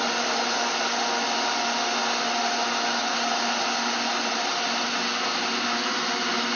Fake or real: real